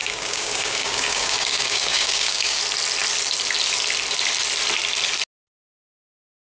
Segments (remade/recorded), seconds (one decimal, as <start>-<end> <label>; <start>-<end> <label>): 0.0-2.6 remade; 2.6-6.4 recorded